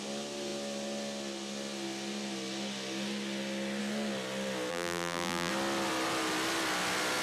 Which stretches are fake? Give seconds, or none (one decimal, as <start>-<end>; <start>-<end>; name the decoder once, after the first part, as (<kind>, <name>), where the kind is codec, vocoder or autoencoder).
4.7-5.5 (vocoder, BigVGAN v2)